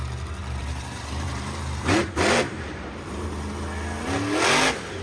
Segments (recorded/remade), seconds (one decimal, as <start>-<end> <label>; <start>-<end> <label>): 0.0-0.4 recorded; 0.4-3.2 remade; 3.2-5.0 recorded